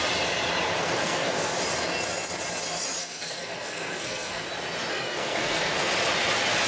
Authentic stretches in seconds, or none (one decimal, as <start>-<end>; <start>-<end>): 0.0-0.8; 1.5-3.0; 4.4-4.9; 5.9-6.7